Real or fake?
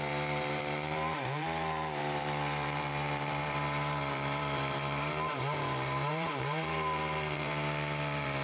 fake